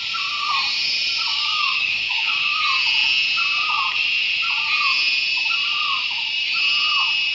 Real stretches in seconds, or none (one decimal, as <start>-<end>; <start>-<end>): 0.0-1.3; 2.6-7.3